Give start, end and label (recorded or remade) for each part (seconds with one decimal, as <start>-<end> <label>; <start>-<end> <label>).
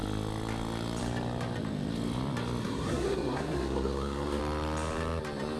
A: 0.0-2.6 recorded; 2.6-4.4 remade; 4.4-5.6 recorded